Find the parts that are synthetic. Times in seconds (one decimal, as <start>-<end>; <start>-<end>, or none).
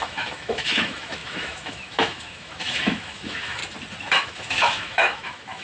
0.0-3.6; 4.1-5.6